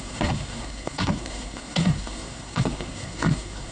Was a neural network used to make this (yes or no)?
yes